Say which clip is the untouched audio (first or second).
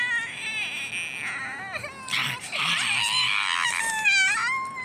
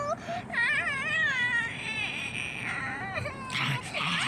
first